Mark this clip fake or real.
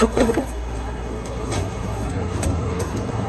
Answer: fake